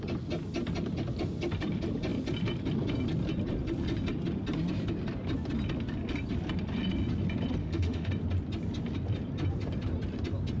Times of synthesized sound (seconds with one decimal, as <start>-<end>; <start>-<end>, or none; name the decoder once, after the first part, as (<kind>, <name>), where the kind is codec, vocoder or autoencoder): 7.6-8.1 (autoencoder, DAC-VAE)